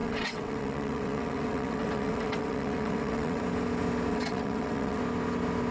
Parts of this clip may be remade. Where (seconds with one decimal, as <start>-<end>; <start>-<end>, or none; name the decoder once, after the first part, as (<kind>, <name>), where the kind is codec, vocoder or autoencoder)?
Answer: 0.0-3.4 (vocoder, WaveNeXt); 4.1-5.0